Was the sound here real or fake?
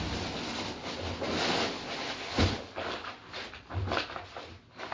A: real